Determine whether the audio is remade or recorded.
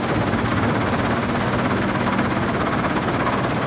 recorded